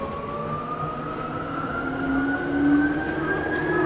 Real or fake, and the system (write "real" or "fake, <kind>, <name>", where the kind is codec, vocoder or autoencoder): real